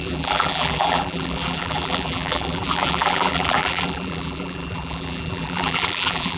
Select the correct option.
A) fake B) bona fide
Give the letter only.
A